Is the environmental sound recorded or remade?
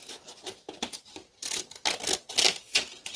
recorded